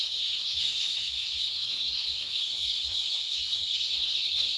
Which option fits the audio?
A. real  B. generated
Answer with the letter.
B